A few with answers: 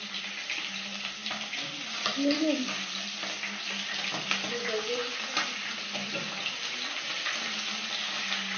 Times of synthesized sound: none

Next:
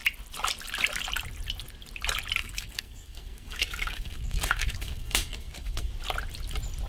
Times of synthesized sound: 2.4-5.9

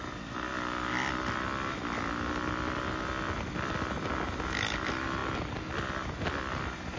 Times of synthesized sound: none